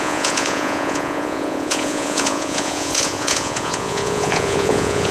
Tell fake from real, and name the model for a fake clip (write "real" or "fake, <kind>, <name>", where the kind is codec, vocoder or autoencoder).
fake, vocoder, Vocos